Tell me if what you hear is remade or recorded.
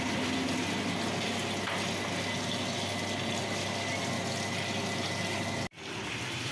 recorded